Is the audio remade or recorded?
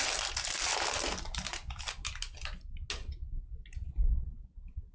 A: recorded